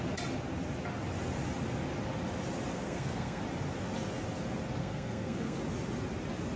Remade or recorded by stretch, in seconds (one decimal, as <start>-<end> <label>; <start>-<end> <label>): 0.0-2.7 recorded; 2.7-3.4 remade; 3.4-4.8 recorded; 4.8-5.6 remade; 5.6-6.6 recorded